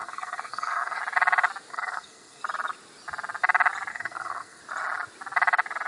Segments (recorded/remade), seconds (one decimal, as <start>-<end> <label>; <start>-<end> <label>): 0.0-1.0 remade; 1.0-1.7 recorded; 1.7-2.4 remade; 2.4-3.9 recorded; 3.9-4.6 remade; 4.6-5.9 recorded